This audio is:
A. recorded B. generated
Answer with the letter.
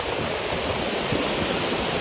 B